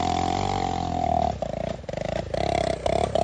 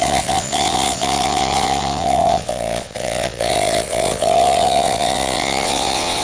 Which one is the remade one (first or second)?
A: second